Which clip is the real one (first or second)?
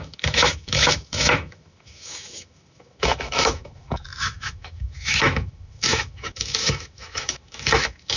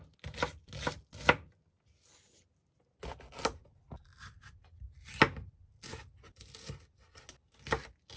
second